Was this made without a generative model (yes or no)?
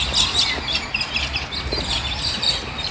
yes